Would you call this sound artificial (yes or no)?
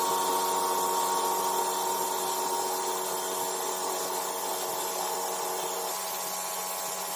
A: no